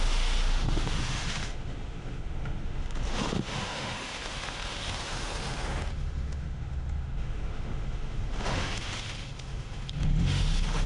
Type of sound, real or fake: fake